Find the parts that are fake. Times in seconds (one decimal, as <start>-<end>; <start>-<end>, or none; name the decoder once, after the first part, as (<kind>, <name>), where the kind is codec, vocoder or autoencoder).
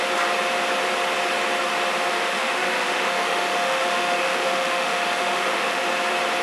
2.1-5.9 (autoencoder, DAC-VAE)